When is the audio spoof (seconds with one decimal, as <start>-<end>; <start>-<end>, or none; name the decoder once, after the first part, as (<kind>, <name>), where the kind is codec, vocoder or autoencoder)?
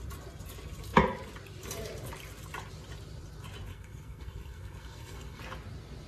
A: 3.7-5.4 (codec, SNAC)